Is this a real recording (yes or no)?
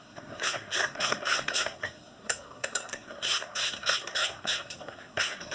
no